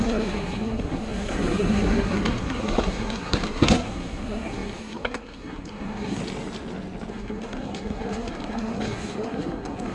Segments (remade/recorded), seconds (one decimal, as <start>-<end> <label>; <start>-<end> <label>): 0.0-6.2 remade; 6.2-7.1 recorded; 7.1-9.9 remade